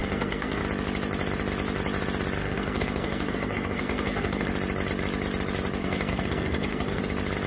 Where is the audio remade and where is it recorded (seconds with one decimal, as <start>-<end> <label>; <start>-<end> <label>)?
0.0-0.6 remade; 0.6-2.4 recorded; 2.4-4.5 remade; 4.5-5.8 recorded; 5.8-7.0 remade; 7.0-7.5 recorded